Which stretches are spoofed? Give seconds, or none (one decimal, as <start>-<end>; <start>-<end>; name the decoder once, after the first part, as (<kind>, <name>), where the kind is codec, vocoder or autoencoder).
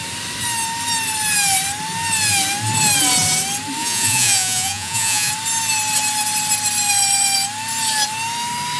3.8-5.3 (vocoder, Vocos)